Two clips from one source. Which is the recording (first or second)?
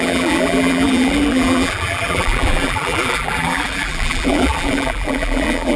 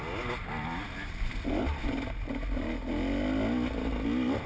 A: second